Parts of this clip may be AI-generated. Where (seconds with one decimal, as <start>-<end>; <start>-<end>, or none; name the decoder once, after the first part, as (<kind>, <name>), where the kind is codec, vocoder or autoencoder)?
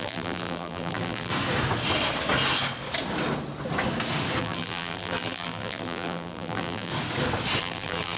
0.0-1.3 (vocoder, BigVGAN v2); 4.4-6.9; 7.6-8.2